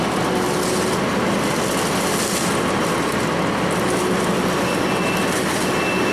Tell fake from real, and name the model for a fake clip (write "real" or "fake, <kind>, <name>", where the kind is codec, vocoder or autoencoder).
real